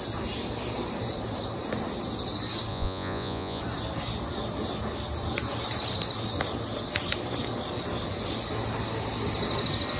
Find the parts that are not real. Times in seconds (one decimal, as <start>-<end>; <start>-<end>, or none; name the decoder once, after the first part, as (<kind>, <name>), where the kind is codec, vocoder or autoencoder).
2.7-3.6 (vocoder, Vocos)